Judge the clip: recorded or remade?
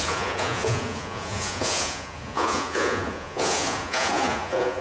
remade